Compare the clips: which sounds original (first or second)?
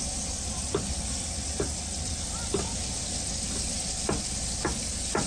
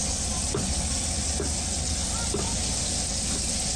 second